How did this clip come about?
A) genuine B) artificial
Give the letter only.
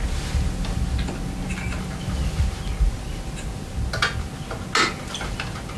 A